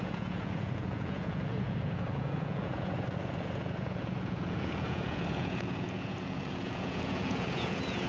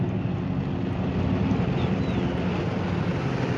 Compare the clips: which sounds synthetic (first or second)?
first